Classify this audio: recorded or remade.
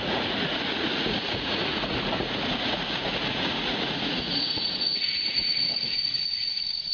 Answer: remade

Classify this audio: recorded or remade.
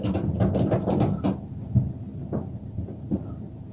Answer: recorded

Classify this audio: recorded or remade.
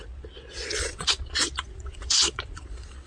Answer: remade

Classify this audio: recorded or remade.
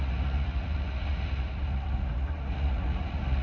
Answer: remade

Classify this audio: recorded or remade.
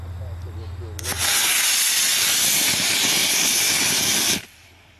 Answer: recorded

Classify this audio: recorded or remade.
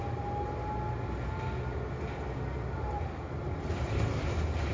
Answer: recorded